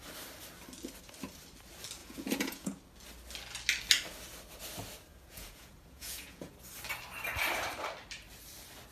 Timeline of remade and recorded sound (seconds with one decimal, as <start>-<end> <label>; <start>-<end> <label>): 0.0-2.0 recorded; 2.0-2.8 remade; 2.8-5.1 recorded; 5.1-6.5 remade; 6.5-8.9 recorded